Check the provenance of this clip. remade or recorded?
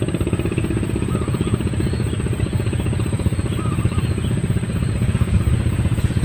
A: remade